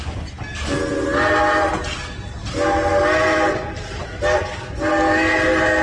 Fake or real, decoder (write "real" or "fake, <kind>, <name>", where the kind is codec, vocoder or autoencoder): real